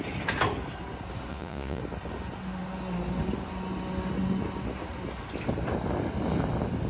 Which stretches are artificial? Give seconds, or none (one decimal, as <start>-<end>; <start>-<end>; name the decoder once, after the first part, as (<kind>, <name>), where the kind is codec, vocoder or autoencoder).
1.3-1.8 (vocoder, Vocos)